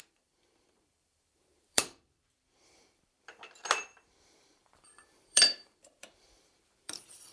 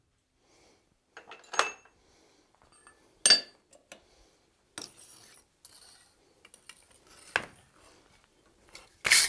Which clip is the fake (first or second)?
first